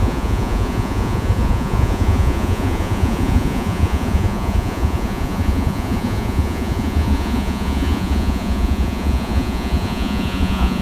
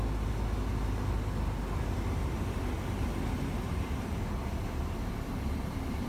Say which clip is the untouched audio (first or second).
second